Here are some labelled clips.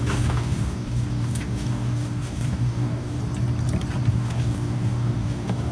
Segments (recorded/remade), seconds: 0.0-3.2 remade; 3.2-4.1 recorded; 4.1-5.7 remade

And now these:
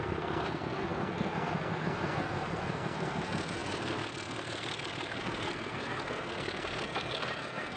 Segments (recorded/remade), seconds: 0.0-7.8 remade

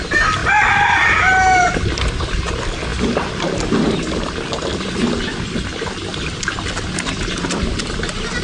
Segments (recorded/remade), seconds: 0.0-8.4 recorded

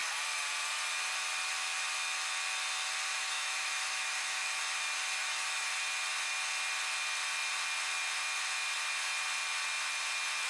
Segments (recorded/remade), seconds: 0.0-3.1 recorded; 3.1-4.6 remade; 4.6-5.2 recorded; 5.2-5.7 remade; 5.7-10.5 recorded

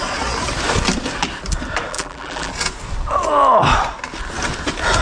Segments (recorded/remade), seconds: 0.0-1.9 recorded; 1.9-2.5 remade; 2.5-5.0 recorded

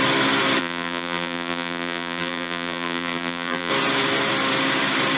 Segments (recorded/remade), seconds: 0.0-0.6 recorded; 0.6-3.7 remade; 3.7-5.2 recorded

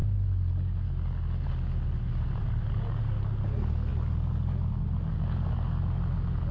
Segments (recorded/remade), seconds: 0.0-6.5 recorded